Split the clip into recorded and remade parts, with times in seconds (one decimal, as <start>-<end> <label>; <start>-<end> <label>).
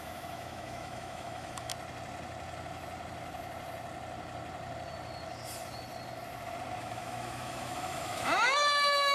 0.0-1.7 remade; 1.7-6.8 recorded; 6.8-9.1 remade